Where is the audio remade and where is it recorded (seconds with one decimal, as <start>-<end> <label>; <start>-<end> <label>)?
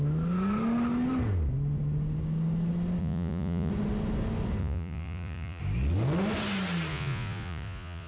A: 0.0-3.0 recorded; 3.0-3.7 remade; 3.7-4.6 recorded; 4.6-5.6 remade; 5.6-6.9 recorded; 6.9-8.1 remade